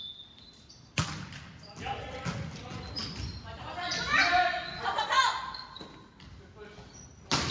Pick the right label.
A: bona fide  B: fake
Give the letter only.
A